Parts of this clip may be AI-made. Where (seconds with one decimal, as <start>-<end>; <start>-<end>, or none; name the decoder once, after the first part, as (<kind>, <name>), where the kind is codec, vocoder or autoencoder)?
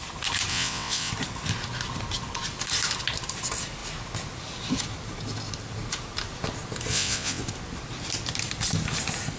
0.5-1.1 (vocoder, WaveNeXt); 6.9-7.4